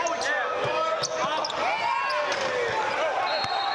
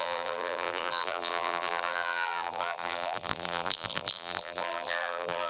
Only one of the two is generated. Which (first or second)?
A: second